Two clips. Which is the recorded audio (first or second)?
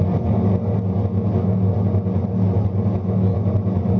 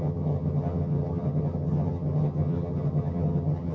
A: first